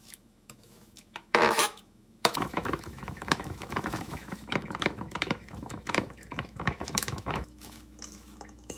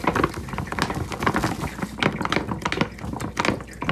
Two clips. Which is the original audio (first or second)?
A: second